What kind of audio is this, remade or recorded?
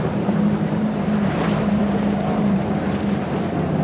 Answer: remade